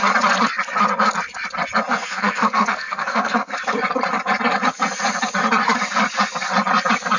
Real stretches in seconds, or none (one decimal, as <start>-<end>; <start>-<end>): 0.0-2.0; 3.5-7.2